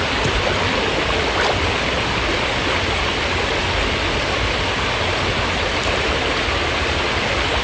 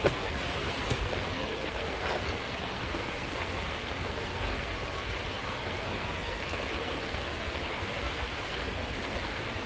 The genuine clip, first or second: first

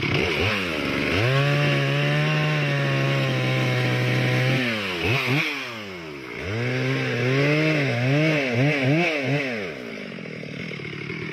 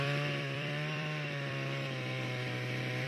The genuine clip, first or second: first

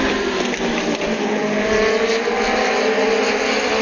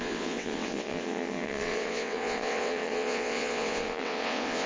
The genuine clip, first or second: first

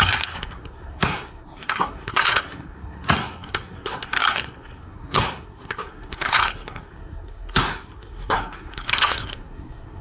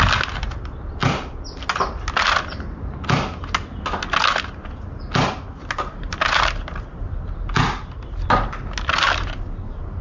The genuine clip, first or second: second